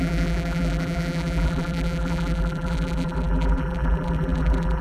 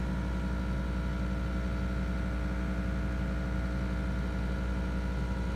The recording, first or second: second